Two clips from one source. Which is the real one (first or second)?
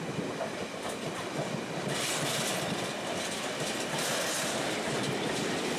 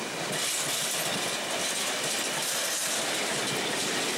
second